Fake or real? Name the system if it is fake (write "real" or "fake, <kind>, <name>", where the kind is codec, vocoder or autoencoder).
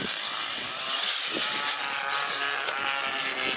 real